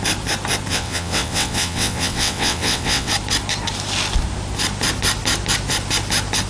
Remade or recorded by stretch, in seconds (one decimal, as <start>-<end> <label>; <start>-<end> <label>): 0.0-0.7 recorded; 0.7-3.1 remade; 3.1-6.5 recorded